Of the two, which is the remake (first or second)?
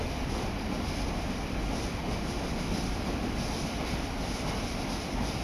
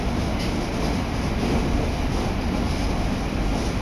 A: first